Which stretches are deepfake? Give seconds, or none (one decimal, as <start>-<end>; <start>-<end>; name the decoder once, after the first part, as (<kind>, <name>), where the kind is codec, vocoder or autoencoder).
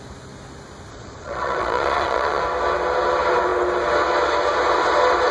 0.9-2.4 (vocoder, Vocos)